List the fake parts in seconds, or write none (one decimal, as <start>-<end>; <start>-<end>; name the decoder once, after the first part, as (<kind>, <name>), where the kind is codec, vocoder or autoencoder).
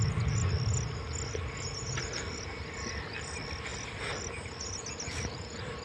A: none